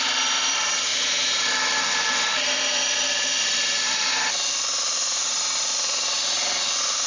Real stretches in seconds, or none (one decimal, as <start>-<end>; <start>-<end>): 0.9-1.8